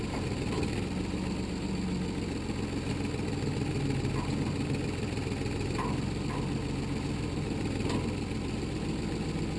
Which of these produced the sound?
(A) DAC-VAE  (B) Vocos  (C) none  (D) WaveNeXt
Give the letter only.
C